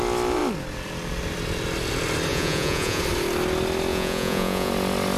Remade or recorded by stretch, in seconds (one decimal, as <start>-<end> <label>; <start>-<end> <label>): 0.0-2.3 recorded; 2.3-3.0 remade; 3.0-3.9 recorded; 3.9-4.7 remade; 4.7-5.2 recorded